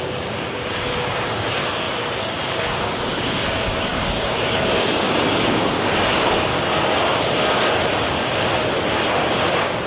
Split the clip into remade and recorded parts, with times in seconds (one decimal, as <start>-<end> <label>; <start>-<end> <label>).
0.0-1.6 remade; 1.6-2.2 recorded; 2.2-6.5 remade; 6.5-9.4 recorded; 9.4-9.9 remade